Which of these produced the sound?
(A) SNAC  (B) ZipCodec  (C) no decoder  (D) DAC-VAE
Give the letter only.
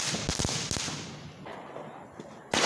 C